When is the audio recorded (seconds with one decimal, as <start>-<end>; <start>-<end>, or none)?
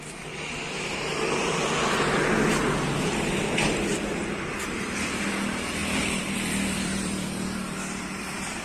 0.0-5.8